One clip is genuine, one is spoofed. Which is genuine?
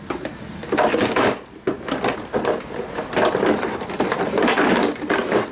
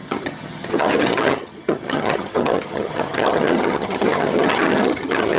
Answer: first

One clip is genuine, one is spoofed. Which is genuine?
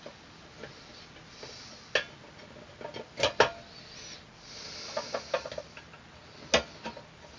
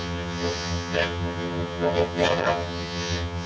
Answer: first